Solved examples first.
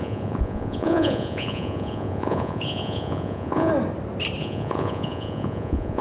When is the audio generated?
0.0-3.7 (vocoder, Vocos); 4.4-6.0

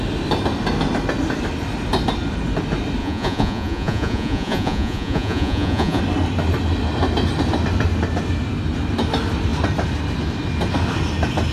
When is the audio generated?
3.0-6.0 (vocoder, Vocos)

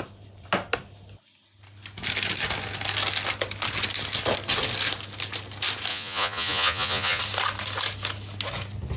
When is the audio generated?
5.9-7.2 (vocoder, Vocos)

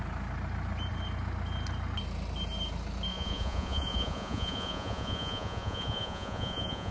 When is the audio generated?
3.1-6.9 (vocoder, Vocos)

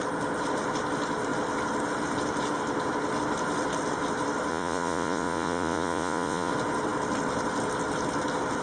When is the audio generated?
4.5-6.5 (vocoder, Vocos)